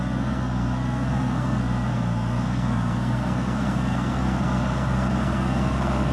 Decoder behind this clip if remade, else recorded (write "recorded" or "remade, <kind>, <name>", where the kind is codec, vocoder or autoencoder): remade, codec, SNAC